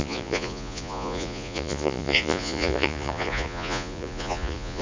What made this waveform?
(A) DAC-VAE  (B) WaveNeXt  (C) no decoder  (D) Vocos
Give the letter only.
D